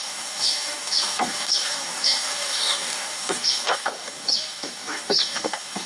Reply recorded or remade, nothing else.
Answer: remade